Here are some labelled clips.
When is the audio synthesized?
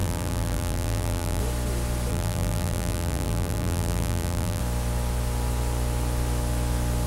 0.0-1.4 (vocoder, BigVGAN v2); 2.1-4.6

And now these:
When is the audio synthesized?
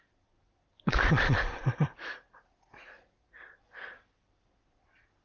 1.6-3.5 (vocoder, Vocos)